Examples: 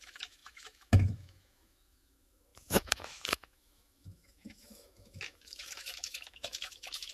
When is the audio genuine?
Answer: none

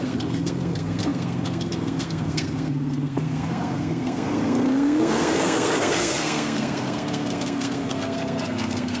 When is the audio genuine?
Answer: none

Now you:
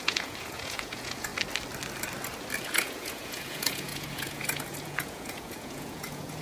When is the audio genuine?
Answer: 1.3-2.6

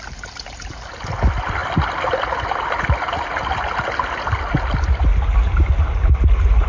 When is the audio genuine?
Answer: 0.0-6.7

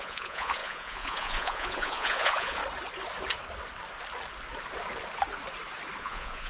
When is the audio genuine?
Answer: 2.6-6.0

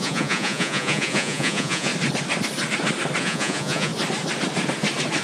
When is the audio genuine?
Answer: 1.9-3.2; 3.9-5.2

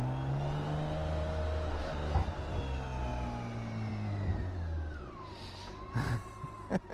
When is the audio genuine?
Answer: 0.0-6.9

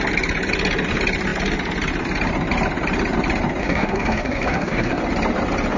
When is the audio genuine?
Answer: 0.0-3.6; 5.0-5.8